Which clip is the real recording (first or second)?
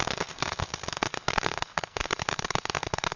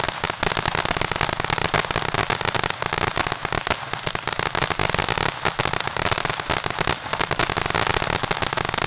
second